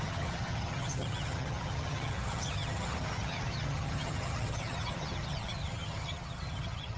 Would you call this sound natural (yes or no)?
no